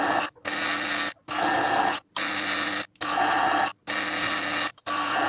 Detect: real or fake real